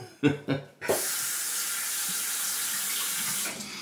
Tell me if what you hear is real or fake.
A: real